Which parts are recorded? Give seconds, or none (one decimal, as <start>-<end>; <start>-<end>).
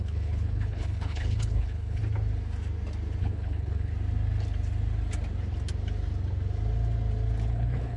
2.0-3.2; 3.9-7.5